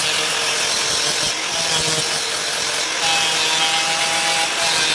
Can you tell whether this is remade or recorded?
recorded